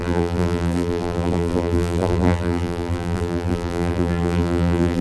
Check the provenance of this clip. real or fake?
fake